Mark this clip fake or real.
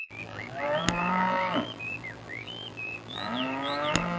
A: fake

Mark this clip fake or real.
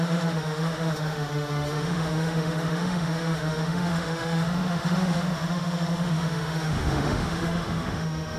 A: fake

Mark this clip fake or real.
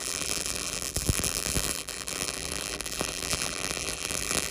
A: fake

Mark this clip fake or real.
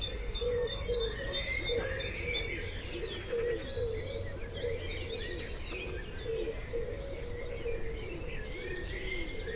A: real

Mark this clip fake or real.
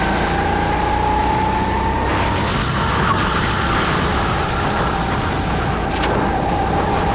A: real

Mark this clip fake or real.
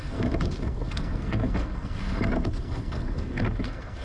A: fake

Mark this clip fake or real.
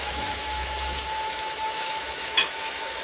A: fake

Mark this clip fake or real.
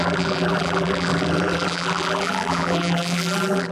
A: fake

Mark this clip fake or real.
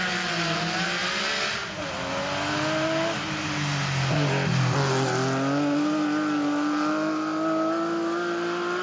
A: real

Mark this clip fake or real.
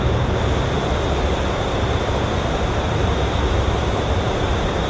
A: real